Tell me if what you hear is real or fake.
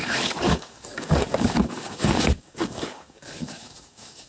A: fake